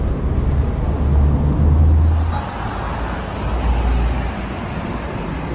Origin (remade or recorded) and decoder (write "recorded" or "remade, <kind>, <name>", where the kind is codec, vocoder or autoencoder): recorded